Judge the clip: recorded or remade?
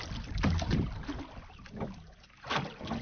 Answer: recorded